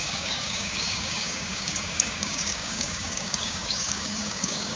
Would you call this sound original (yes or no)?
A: no